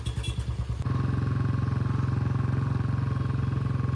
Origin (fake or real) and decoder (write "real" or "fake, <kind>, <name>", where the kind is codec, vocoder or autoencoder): real